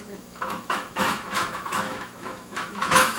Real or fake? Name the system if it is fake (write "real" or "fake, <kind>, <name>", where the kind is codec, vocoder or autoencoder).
fake, autoencoder, DAC-VAE